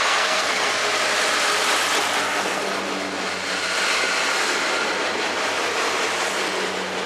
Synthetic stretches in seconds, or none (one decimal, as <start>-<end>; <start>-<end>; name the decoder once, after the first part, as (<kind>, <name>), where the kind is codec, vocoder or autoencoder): 0.0-0.8 (codec, SNAC); 2.2-2.6